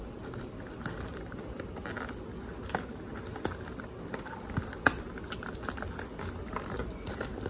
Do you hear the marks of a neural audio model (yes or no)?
no